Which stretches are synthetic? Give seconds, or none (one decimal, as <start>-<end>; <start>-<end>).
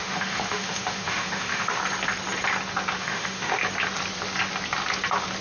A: 0.0-1.8; 3.0-3.6